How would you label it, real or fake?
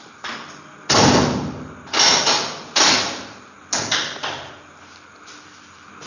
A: real